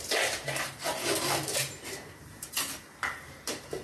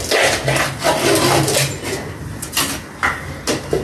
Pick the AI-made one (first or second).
first